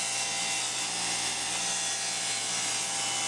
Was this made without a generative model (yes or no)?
yes